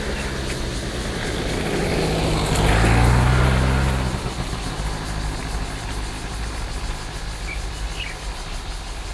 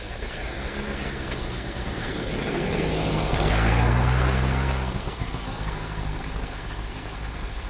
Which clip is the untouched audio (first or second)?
first